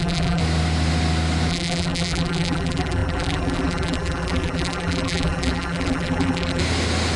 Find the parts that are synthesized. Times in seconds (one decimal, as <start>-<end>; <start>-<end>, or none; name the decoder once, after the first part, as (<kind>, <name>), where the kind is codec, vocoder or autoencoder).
0.0-0.4 (vocoder, BigVGAN v2); 1.5-6.6

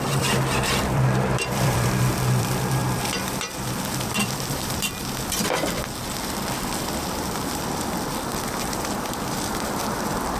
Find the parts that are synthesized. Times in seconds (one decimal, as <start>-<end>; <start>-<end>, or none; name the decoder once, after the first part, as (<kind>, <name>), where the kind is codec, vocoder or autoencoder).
0.0-10.4 (vocoder, BigVGAN v2)

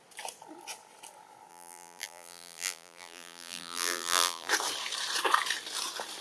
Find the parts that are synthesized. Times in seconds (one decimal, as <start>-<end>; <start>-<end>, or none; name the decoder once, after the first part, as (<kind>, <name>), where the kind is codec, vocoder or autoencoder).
1.5-4.5 (vocoder, BigVGAN v2)

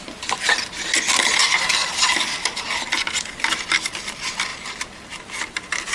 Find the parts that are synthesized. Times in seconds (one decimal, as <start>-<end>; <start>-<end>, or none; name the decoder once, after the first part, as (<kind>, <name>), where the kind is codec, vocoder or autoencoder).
1.4-2.2 (vocoder, BigVGAN v2); 4.5-5.9

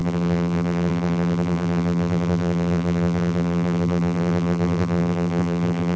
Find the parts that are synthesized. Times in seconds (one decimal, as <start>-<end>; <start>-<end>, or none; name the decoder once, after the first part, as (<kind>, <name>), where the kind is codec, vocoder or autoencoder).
0.0-6.0 (vocoder, BigVGAN v2)

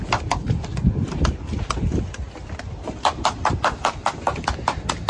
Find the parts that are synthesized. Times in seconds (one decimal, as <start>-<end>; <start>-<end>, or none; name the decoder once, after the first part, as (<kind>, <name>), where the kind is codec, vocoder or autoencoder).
2.4-4.5 (vocoder, BigVGAN v2)

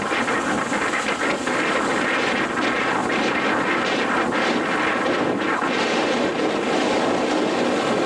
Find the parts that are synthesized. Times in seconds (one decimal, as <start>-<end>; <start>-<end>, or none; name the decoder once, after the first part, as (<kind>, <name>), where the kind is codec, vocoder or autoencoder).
none

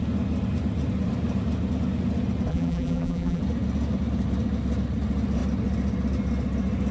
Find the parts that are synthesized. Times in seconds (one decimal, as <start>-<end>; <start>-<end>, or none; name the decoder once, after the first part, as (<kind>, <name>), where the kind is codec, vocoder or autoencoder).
2.5-3.4 (vocoder, BigVGAN v2)